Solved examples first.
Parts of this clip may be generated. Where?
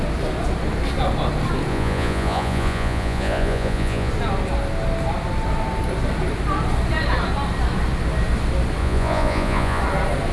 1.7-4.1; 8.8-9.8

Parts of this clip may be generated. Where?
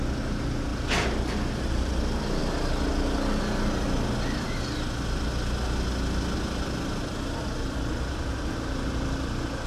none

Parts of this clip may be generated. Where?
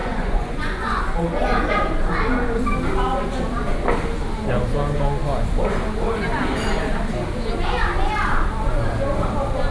0.0-1.0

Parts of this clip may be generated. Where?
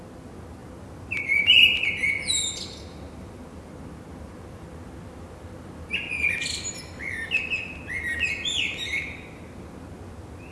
none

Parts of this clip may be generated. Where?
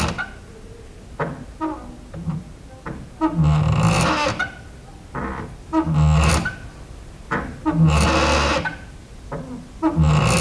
none